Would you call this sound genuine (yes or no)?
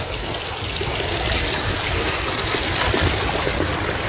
yes